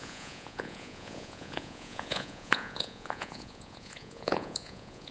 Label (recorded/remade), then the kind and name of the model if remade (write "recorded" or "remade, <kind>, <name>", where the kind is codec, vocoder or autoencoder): remade, vocoder, Vocos